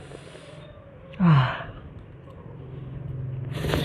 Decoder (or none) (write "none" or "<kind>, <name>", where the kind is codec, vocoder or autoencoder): none